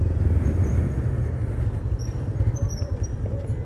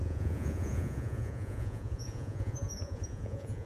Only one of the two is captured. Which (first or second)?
first